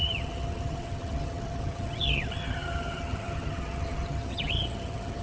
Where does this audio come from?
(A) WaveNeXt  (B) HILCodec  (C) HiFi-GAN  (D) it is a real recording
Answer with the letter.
C